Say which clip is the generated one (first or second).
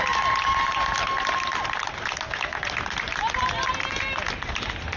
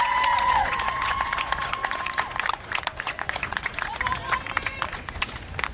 second